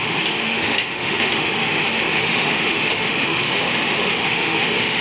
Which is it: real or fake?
fake